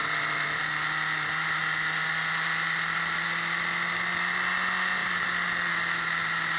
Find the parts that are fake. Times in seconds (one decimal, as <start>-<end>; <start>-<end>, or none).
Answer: 0.0-0.6; 1.6-4.1; 5.0-5.7